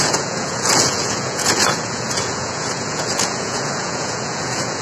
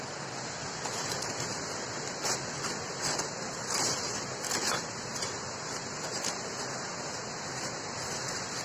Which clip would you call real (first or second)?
second